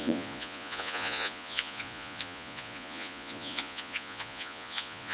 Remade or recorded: remade